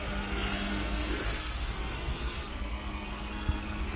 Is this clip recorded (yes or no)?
no